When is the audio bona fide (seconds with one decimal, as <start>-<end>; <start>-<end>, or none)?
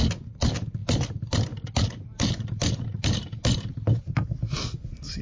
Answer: 0.0-0.8; 3.2-5.2